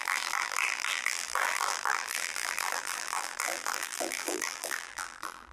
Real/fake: fake